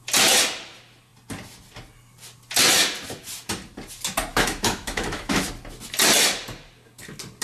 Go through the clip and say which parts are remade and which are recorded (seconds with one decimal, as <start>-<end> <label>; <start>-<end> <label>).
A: 0.0-4.3 recorded; 4.3-5.5 remade; 5.5-7.4 recorded